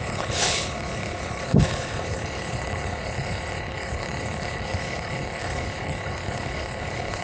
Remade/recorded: remade